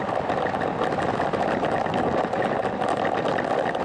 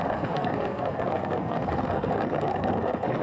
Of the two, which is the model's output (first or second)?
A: second